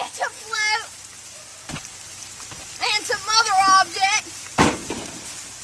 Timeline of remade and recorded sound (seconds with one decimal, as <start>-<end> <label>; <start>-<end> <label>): 0.0-1.5 recorded; 1.5-4.2 remade; 4.2-5.6 recorded